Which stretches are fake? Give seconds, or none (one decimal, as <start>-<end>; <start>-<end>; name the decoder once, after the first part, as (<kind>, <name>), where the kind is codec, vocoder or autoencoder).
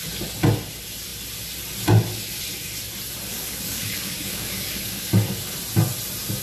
3.3-5.1 (codec, DAC)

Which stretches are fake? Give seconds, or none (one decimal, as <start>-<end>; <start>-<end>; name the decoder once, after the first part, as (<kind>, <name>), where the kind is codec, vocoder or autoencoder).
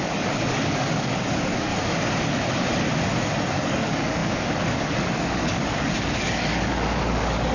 0.0-1.7 (codec, DAC); 3.5-7.5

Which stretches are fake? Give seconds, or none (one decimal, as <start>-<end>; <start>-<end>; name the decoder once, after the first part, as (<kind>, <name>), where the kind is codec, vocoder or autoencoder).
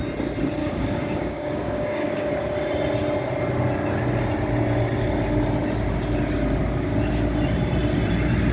0.6-2.3 (codec, DAC)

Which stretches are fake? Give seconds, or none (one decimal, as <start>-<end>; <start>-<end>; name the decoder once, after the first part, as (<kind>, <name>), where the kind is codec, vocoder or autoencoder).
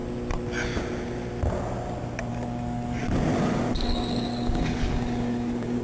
2.3-3.0 (codec, DAC); 3.7-5.8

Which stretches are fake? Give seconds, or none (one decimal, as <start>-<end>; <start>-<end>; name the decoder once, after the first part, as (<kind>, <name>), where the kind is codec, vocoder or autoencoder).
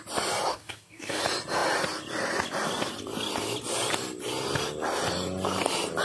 0.5-1.2 (codec, DAC)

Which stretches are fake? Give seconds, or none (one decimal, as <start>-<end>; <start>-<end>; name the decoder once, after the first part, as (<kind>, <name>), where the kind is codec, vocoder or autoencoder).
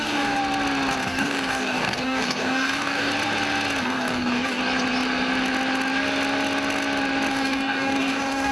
0.0-0.4 (codec, DAC); 1.0-3.1; 3.8-4.6; 7.3-8.5